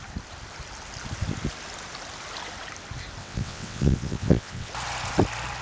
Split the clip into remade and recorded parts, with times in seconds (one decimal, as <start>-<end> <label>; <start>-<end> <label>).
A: 0.0-3.2 recorded; 3.2-4.7 remade; 4.7-5.6 recorded